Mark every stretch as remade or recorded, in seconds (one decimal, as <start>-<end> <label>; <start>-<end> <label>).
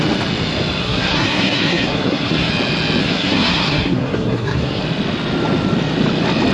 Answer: 0.0-0.8 recorded; 0.8-2.5 remade; 2.5-3.0 recorded; 3.0-4.8 remade; 4.8-6.5 recorded